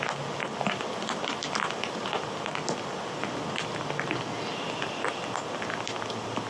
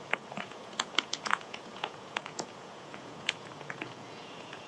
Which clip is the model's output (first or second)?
second